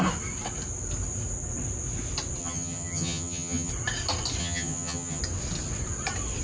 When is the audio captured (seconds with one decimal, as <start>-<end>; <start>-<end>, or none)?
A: 0.0-2.4; 3.7-4.4; 5.2-6.4